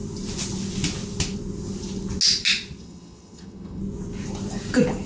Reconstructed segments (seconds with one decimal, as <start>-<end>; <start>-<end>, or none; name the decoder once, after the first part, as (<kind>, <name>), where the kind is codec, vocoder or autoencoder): 2.8-3.8 (vocoder, HiFi-GAN)